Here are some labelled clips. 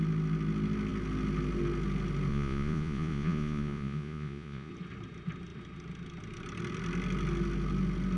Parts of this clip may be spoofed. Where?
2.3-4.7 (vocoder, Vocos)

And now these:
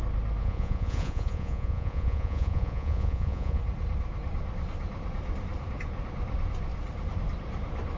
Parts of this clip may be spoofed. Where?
0.4-3.6 (vocoder, Vocos)

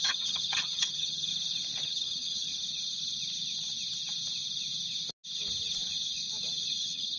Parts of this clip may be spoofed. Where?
0.0-1.3 (vocoder, HiFi-GAN); 1.8-2.5; 6.8-7.2